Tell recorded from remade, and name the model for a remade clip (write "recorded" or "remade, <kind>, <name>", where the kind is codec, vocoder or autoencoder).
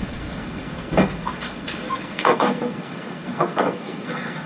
remade, codec, SNAC